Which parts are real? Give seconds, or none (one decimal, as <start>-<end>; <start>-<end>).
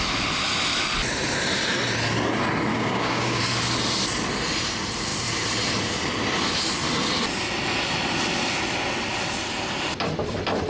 0.0-2.7; 3.4-10.7